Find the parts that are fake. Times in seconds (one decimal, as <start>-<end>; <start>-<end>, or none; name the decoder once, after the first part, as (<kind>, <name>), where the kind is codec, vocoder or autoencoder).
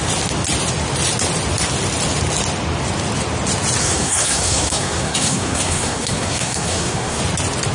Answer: 3.8-7.2 (codec, SNAC)